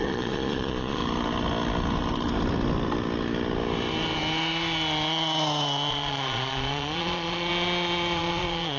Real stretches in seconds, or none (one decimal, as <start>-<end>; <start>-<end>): 1.0-5.9; 7.5-8.2